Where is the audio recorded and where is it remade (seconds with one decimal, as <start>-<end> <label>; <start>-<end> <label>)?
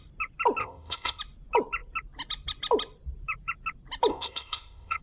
0.0-0.6 recorded; 0.6-1.2 remade; 1.2-4.1 recorded; 4.1-5.0 remade